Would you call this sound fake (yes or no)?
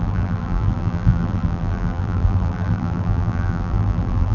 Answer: yes